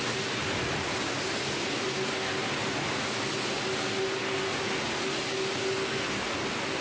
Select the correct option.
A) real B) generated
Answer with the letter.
A